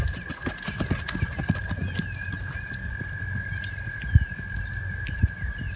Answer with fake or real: real